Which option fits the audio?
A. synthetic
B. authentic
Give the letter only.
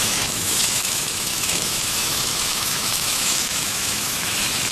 A